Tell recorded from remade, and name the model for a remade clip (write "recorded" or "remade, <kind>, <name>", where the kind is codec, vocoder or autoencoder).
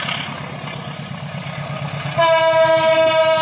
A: recorded